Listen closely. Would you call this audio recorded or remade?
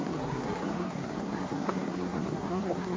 remade